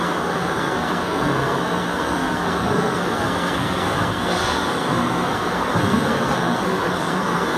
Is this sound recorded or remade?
remade